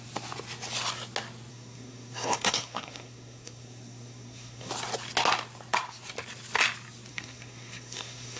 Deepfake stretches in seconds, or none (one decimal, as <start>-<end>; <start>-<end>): 1.5-4.7; 7.1-8.4